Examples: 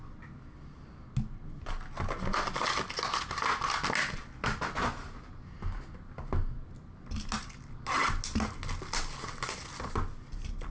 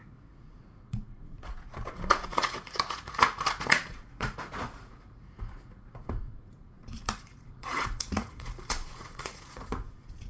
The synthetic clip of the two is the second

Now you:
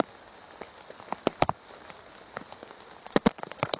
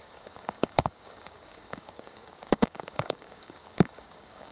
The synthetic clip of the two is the second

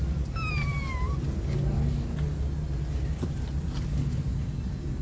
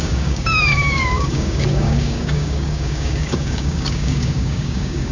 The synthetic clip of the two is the second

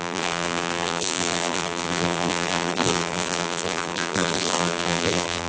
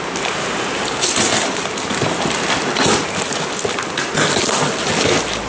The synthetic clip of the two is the first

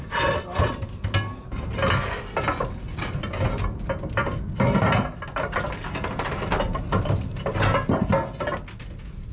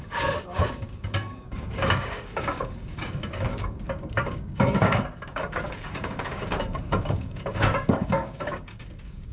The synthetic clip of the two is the second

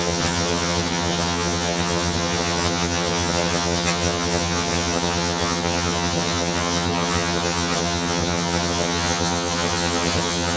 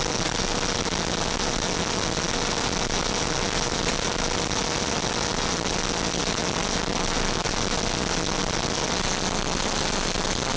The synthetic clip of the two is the first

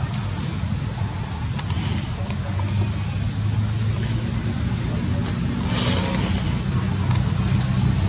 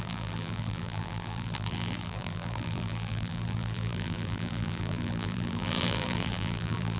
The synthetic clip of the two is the second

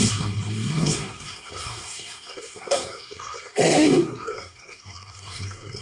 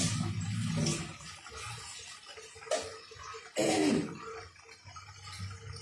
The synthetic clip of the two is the first